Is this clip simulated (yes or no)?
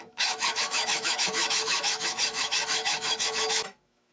yes